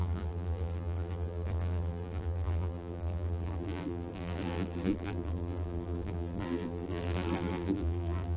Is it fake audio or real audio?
fake